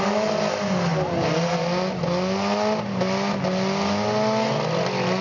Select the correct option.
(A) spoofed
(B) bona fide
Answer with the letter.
B